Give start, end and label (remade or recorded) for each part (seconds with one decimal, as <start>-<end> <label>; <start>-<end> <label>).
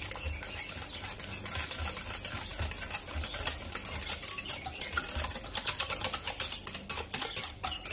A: 0.0-7.9 recorded